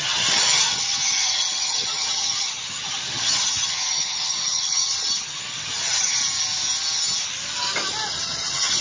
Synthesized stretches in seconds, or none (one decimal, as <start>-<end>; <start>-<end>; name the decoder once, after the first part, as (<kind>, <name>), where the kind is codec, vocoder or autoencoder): 0.0-6.2 (vocoder, HiFi-GAN); 8.1-8.8